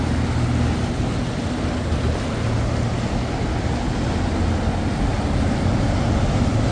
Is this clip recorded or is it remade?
recorded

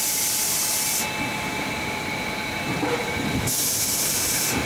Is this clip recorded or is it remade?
recorded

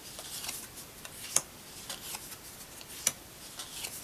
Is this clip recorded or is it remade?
recorded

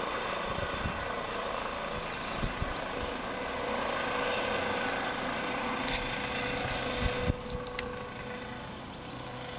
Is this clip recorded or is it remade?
recorded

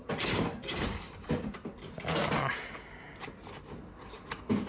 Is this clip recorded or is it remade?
recorded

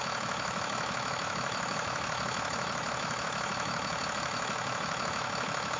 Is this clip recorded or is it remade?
remade